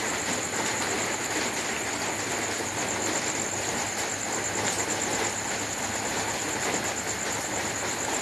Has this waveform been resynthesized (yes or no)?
no